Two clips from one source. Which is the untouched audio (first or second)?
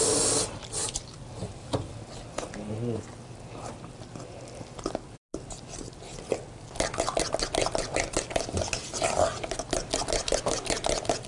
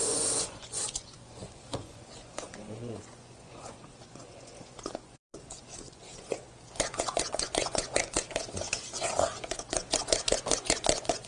first